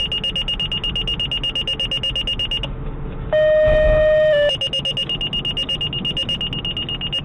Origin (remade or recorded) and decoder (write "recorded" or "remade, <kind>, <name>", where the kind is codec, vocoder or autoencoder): recorded